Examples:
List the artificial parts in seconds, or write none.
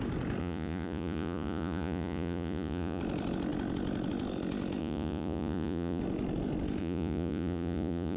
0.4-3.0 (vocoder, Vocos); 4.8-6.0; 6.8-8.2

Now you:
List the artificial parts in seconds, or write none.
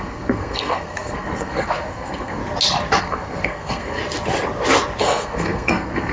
0.0-2.4 (codec, SNAC); 3.0-4.0; 5.0-6.1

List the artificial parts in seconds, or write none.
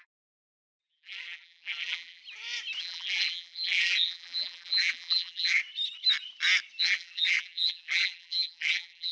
0.0-2.2 (vocoder, BigVGAN v2); 2.8-5.6; 6.8-9.1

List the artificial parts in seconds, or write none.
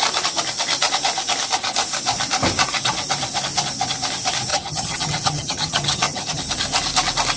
4.5-6.4 (vocoder, HiFi-GAN)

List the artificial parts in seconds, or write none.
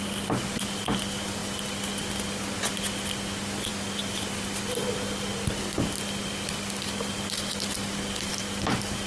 none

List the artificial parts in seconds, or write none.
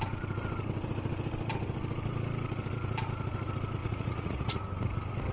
3.8-4.6 (vocoder, Vocos)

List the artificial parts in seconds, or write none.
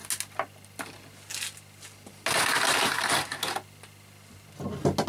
none